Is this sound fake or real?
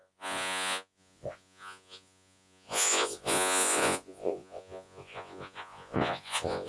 fake